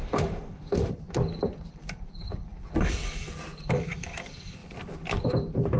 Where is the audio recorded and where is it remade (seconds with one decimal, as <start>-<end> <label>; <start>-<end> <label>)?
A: 0.0-0.9 remade; 0.9-5.8 recorded